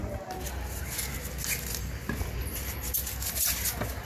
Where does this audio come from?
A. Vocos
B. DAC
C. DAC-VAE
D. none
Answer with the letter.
D